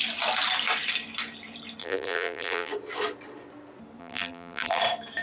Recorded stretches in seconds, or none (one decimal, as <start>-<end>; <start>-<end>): 0.0-1.8; 2.7-4.0; 4.8-5.2